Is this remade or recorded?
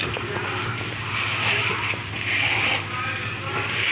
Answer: recorded